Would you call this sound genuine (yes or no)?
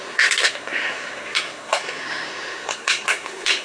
no